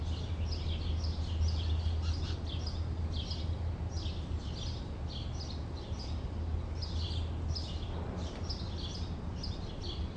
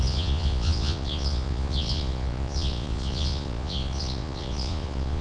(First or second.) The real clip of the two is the first